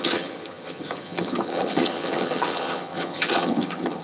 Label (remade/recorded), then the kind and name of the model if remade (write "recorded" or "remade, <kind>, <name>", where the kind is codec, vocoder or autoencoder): remade, vocoder, HiFi-GAN